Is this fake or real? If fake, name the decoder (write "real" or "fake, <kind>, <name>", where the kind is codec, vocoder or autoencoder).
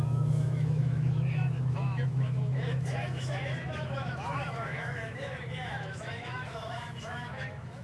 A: fake, autoencoder, DAC-VAE